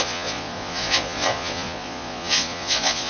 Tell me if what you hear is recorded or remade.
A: remade